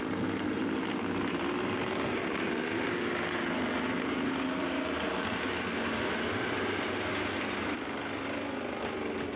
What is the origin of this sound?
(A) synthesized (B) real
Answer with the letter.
B